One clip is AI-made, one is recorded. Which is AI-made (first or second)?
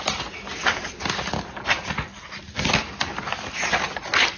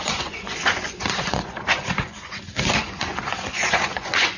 second